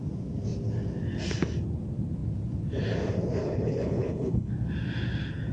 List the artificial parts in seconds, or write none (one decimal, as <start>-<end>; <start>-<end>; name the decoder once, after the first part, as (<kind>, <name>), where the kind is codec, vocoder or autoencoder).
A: 3.4-4.5 (codec, HILCodec)